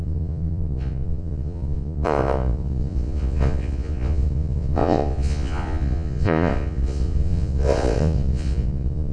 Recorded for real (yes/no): no